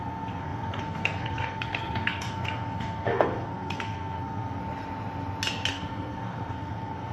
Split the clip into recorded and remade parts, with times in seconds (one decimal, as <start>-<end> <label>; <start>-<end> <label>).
0.0-4.6 remade; 4.6-5.7 recorded; 5.7-7.1 remade